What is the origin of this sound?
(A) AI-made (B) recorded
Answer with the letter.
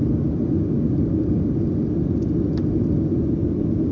B